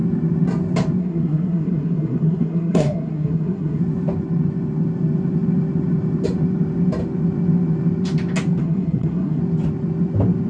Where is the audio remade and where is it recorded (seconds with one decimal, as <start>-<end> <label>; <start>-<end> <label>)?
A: 0.0-1.0 recorded; 1.0-3.8 remade; 3.8-8.6 recorded; 8.6-9.4 remade; 9.4-10.5 recorded